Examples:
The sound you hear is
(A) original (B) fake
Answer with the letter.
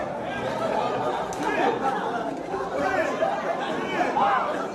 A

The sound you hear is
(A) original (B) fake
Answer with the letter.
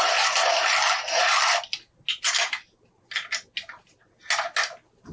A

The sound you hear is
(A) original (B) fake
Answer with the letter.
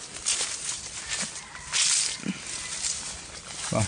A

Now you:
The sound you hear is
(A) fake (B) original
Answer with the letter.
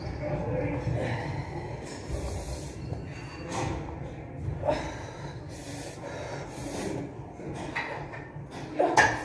B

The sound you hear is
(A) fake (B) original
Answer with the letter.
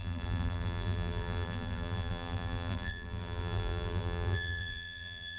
A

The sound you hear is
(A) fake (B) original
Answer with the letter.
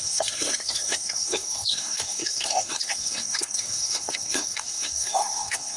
A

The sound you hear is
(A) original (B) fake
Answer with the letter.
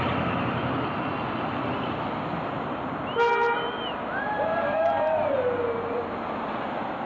A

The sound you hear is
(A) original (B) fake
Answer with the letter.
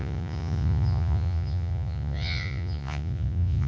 B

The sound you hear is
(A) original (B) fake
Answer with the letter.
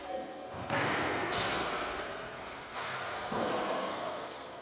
B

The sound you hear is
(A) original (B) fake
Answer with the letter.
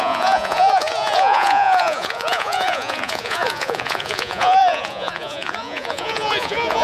B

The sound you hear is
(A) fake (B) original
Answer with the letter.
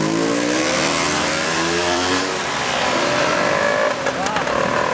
A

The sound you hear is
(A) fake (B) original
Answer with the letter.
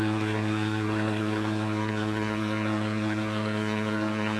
A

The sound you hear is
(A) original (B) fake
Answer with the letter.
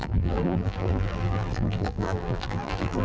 B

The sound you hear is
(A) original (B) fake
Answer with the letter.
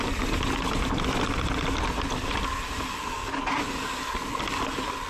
A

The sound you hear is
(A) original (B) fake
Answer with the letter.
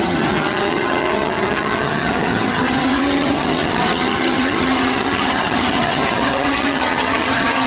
B